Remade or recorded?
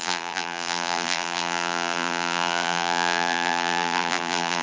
remade